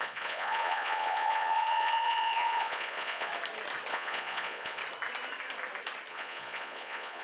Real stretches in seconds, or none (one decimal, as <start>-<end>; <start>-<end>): 3.3-3.9; 4.8-6.1